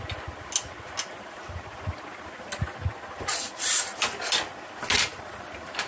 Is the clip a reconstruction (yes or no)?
no